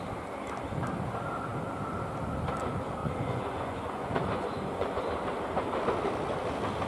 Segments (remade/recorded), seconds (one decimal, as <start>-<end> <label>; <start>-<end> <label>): 0.0-3.0 recorded; 3.0-5.0 remade; 5.0-6.9 recorded